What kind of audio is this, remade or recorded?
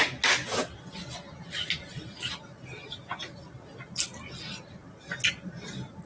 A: recorded